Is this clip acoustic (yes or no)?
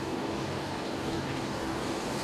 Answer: no